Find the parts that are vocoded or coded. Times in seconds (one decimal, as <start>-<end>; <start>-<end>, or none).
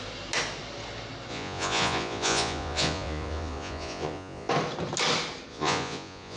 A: 1.3-4.5; 5.5-6.4